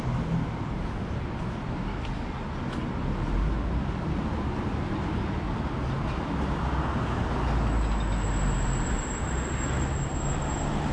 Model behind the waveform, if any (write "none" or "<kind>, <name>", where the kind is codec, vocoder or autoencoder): none